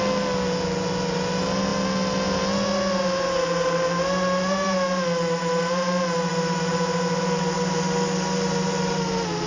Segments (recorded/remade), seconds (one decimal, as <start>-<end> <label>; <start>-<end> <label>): 0.0-9.5 recorded